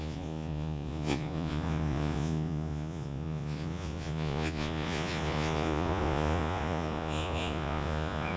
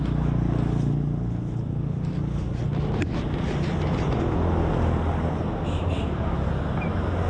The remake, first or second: first